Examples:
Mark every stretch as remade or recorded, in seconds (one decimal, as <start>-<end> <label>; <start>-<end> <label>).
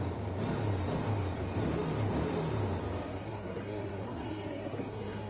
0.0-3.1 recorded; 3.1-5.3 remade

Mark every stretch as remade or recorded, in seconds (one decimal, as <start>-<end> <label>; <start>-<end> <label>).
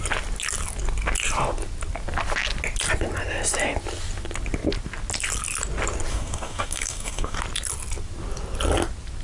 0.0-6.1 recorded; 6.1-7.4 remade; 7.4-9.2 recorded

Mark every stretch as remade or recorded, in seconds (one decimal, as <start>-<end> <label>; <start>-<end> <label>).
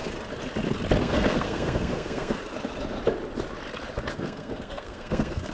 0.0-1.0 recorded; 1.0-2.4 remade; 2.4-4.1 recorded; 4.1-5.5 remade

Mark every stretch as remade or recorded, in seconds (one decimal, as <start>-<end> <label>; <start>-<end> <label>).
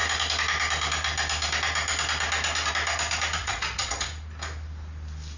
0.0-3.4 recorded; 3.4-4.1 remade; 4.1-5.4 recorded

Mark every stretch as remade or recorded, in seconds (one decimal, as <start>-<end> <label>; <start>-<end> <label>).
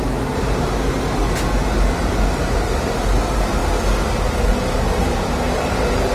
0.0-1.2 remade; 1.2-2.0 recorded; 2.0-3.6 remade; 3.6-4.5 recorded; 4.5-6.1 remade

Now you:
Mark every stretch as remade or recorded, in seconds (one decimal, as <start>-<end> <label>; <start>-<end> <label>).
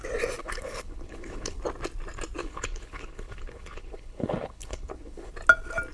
0.0-0.4 recorded; 0.4-1.6 remade; 1.6-2.4 recorded; 2.4-5.3 remade; 5.3-5.9 recorded